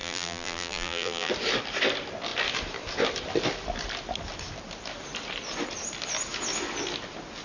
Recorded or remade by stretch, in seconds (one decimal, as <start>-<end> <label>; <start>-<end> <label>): 0.0-1.3 remade; 1.3-7.4 recorded